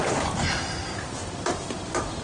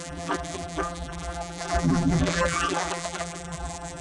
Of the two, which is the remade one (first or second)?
second